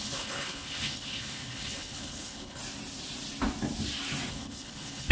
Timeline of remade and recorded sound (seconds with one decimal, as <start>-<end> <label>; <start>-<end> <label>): 0.0-2.6 remade; 2.6-4.3 recorded; 4.3-5.1 remade